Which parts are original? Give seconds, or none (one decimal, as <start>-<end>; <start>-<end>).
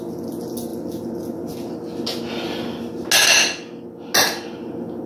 0.0-5.1